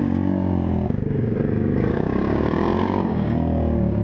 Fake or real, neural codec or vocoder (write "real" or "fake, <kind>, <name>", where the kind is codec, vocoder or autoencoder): fake, codec, DAC